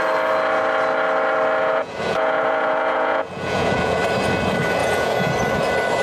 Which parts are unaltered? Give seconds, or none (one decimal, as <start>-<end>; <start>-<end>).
0.0-1.6; 4.0-4.8; 5.3-6.0